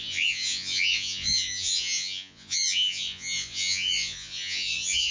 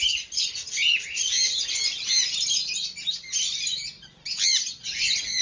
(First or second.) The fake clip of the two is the first